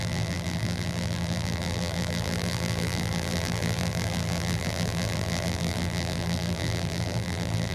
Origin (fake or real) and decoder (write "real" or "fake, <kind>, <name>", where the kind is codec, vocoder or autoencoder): fake, vocoder, BigVGAN v2